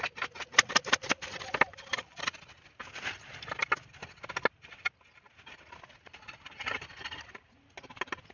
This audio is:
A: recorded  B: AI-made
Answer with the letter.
A